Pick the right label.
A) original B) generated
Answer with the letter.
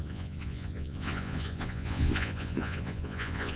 B